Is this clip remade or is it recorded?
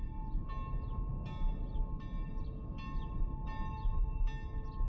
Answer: recorded